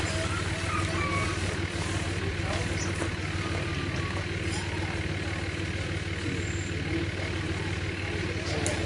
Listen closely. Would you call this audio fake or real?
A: real